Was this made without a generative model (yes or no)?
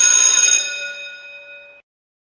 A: yes